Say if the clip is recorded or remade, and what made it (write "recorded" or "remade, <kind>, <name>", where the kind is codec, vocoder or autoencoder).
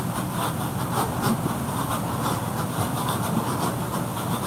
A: remade, vocoder, BigVGAN v2